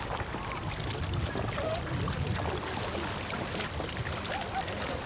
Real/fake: real